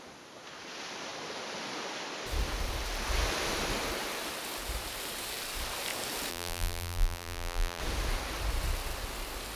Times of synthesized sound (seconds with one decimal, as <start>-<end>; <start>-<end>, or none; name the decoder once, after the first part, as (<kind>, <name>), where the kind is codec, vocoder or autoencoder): 6.3-7.8 (vocoder, BigVGAN v2)